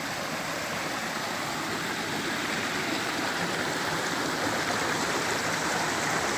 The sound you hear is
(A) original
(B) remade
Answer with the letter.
A